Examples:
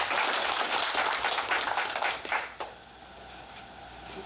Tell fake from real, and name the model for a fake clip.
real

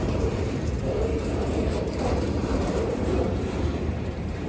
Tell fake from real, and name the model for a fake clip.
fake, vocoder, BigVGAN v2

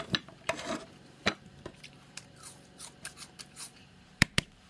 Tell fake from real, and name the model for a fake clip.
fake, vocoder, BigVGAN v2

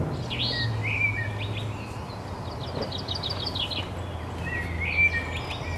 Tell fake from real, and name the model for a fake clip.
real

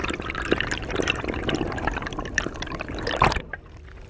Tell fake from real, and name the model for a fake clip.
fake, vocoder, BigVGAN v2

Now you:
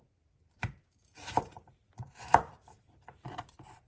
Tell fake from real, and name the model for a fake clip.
fake, vocoder, BigVGAN v2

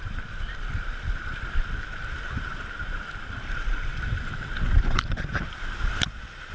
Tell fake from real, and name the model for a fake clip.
fake, vocoder, BigVGAN v2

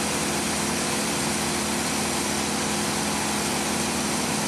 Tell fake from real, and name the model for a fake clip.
real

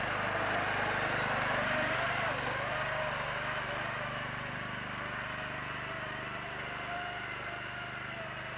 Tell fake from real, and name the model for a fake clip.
real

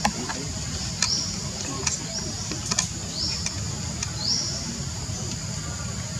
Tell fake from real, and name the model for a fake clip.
real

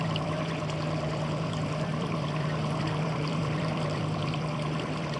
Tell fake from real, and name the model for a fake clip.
fake, vocoder, BigVGAN v2